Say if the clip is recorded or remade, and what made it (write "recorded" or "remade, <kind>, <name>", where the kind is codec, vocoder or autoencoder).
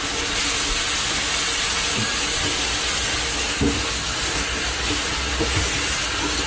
recorded